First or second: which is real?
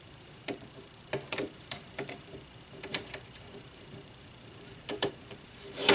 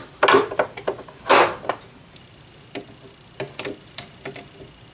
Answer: second